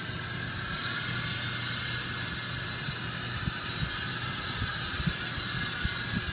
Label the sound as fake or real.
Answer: real